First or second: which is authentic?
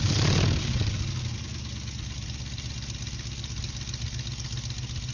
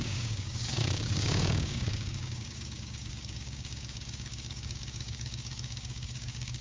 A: first